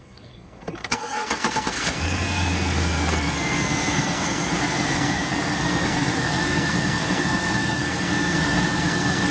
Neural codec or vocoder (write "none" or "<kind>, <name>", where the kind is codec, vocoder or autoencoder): codec, SNAC